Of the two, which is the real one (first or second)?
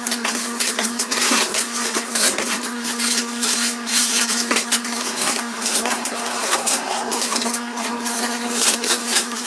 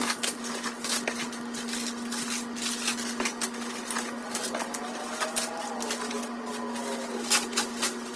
second